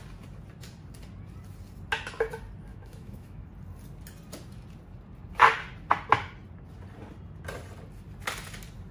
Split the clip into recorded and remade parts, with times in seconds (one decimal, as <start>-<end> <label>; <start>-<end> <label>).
0.0-2.7 recorded; 2.7-3.4 remade; 3.4-8.9 recorded